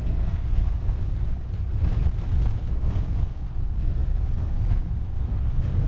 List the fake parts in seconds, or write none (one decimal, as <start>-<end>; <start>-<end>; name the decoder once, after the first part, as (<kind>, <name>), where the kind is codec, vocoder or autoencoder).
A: 0.0-1.2 (codec, SNAC); 2.3-5.9

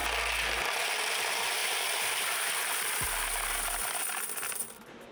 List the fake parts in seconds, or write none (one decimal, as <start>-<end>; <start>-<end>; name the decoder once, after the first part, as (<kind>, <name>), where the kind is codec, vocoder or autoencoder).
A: none

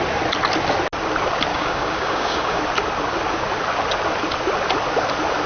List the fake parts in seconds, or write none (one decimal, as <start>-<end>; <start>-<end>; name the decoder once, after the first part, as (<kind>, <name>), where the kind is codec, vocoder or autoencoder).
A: 1.5-2.6 (codec, DAC)

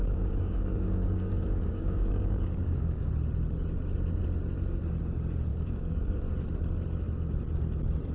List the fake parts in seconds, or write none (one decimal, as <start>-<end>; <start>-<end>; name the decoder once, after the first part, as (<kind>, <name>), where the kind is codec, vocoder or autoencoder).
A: 0.0-3.1 (codec, DAC); 5.5-6.2

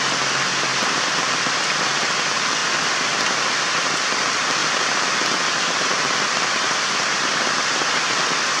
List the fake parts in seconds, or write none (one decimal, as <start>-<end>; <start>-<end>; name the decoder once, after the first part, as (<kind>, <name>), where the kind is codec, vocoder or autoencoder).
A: 0.7-1.4 (vocoder, BigVGAN v2); 2.6-3.7; 4.6-7.7

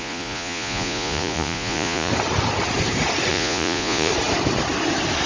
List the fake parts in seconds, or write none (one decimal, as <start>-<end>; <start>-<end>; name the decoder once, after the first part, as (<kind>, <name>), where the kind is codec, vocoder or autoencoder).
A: 0.0-2.1 (vocoder, Vocos); 3.3-4.1

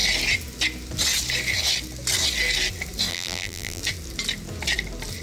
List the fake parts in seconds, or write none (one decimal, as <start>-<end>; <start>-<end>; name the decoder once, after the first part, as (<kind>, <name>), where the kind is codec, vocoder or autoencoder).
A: 3.1-3.8 (vocoder, BigVGAN v2)